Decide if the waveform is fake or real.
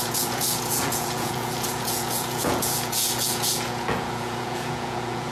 fake